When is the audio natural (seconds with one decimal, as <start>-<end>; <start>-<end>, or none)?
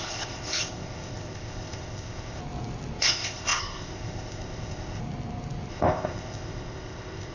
2.4-3.0; 5.0-5.7